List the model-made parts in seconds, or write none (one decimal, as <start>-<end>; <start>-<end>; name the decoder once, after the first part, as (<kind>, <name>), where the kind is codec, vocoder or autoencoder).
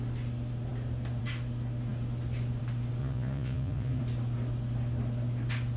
3.0-4.0 (vocoder, Vocos)